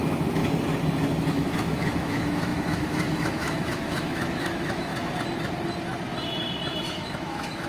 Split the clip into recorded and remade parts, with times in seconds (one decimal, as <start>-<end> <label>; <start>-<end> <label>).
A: 0.0-0.4 remade; 0.4-1.3 recorded; 1.3-4.9 remade; 4.9-6.9 recorded; 6.9-7.7 remade